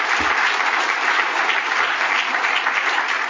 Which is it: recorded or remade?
recorded